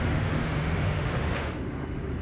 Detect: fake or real fake